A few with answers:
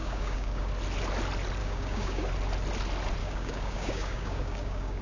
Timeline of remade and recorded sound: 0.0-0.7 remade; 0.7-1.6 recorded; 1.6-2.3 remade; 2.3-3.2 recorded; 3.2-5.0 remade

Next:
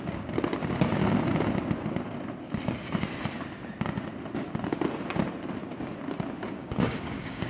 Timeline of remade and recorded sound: 0.0-6.6 recorded; 6.6-7.5 remade

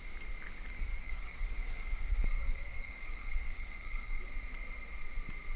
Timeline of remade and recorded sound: 0.0-0.9 recorded; 0.9-4.3 remade; 4.3-5.6 recorded

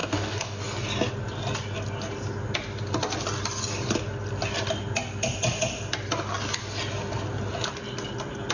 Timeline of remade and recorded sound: 0.0-0.6 remade; 0.6-8.5 recorded

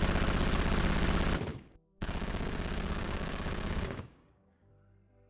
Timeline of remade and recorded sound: 0.0-1.5 recorded; 1.5-4.7 remade; 4.7-5.3 recorded

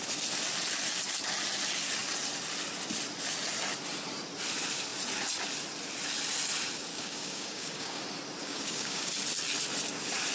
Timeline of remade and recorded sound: 0.0-6.9 recorded; 6.9-8.0 remade; 8.0-8.4 recorded; 8.4-9.1 remade; 9.1-10.3 recorded

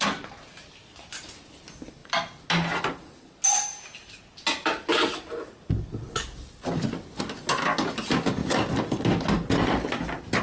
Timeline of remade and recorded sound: 0.0-10.4 recorded